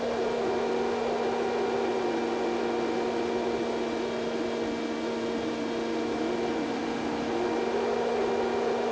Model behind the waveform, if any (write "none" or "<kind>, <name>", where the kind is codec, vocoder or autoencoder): none